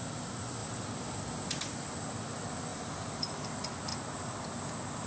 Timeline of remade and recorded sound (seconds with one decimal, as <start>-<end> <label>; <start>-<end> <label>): 0.0-2.7 recorded; 2.7-3.5 remade; 3.5-5.1 recorded

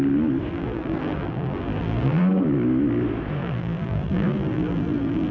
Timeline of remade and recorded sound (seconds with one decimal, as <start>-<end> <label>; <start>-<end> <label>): 0.0-0.5 recorded; 0.5-2.2 remade; 2.2-3.4 recorded; 3.4-5.3 remade

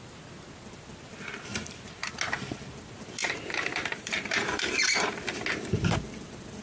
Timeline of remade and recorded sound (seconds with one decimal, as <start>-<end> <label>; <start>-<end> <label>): 0.0-1.5 recorded; 1.5-2.1 remade; 2.1-3.2 recorded; 3.2-5.2 remade; 5.2-6.6 recorded

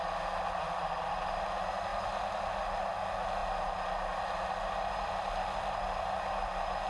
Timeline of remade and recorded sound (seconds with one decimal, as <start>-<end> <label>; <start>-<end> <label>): 0.0-6.9 recorded

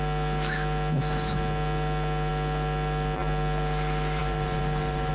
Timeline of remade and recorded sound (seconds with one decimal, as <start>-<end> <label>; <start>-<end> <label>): 0.0-4.2 recorded; 4.2-5.1 remade

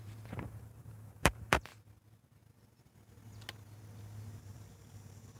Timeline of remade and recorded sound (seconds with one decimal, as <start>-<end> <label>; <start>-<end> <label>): 0.0-1.7 remade; 1.7-4.4 recorded; 4.4-5.4 remade

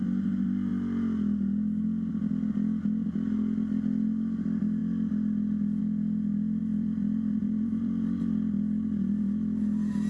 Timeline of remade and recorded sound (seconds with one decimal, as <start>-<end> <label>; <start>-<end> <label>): 0.0-6.6 recorded; 6.6-8.2 remade; 8.2-10.1 recorded